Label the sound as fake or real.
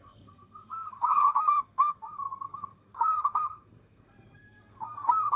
fake